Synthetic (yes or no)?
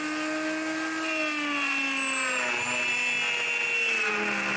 no